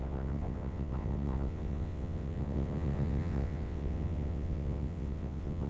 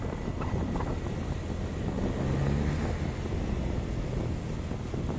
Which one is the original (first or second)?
second